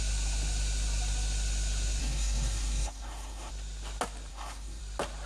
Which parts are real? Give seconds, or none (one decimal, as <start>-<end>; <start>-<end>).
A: 0.0-2.0; 3.5-4.3; 4.8-5.3